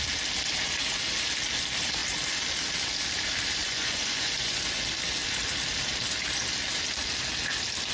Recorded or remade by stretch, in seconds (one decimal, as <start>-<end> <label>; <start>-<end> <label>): 0.0-3.6 recorded; 3.6-4.6 remade; 4.6-7.9 recorded